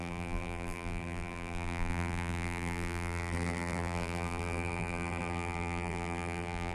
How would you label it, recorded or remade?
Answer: remade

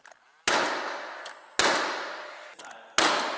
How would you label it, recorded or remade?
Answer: recorded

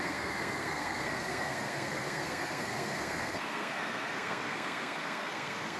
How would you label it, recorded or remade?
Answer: remade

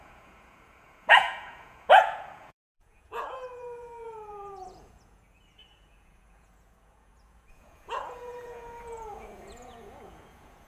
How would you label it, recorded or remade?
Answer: remade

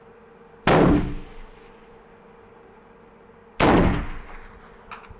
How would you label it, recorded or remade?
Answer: recorded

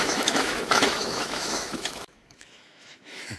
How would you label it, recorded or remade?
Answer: remade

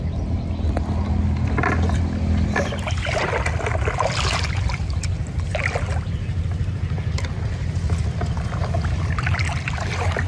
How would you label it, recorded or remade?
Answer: recorded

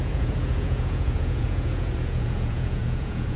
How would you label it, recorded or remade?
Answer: remade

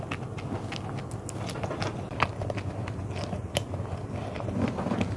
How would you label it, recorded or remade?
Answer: recorded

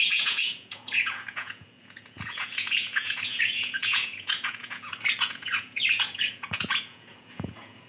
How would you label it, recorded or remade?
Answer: remade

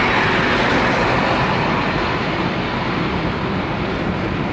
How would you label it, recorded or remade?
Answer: recorded